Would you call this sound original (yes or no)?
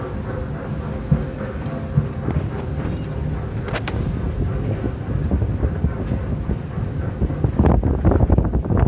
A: yes